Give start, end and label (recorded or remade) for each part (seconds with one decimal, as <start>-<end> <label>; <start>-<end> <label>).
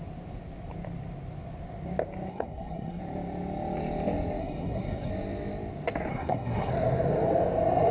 0.0-2.3 recorded; 2.3-3.0 remade; 3.0-4.4 recorded; 4.4-5.1 remade; 5.1-6.1 recorded; 6.1-6.7 remade; 6.7-7.9 recorded